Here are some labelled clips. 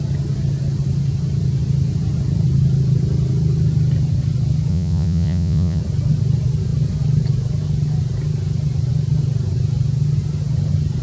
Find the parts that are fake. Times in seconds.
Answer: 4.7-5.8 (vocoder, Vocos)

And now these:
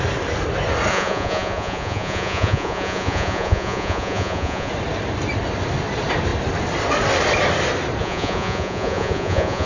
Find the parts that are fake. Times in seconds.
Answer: 0.9-4.7 (vocoder, Vocos); 8.0-9.7

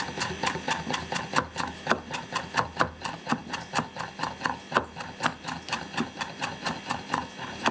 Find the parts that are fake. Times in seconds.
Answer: none

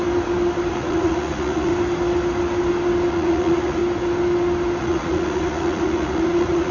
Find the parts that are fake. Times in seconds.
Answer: 0.7-1.7 (vocoder, Vocos); 3.1-3.8; 4.8-6.7

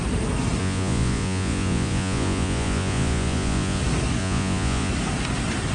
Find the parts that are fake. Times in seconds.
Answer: 0.6-3.8 (vocoder, Vocos); 4.2-4.9

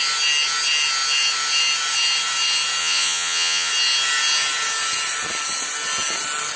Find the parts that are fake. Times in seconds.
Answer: 2.8-3.7 (vocoder, Vocos)

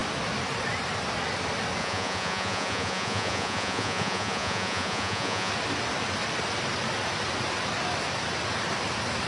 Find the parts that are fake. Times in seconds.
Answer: 1.8-5.5 (vocoder, Vocos)

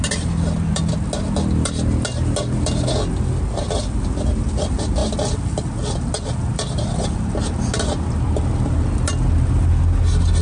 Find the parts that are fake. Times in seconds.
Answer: none